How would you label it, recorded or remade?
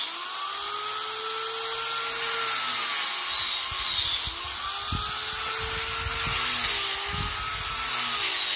recorded